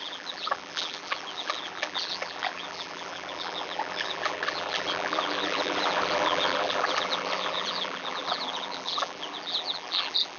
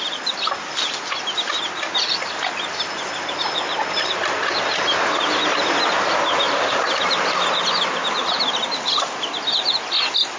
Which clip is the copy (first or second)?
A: first